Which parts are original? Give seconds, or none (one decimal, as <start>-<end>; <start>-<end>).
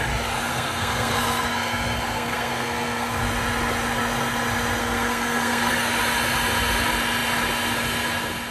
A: 0.0-0.5; 3.2-4.8; 6.0-8.5